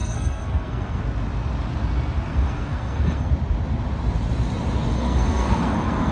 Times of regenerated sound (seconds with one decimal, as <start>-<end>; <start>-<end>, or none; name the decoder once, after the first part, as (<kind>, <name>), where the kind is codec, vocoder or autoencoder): 0.0-1.0 (codec, SNAC); 2.3-3.3; 4.9-6.1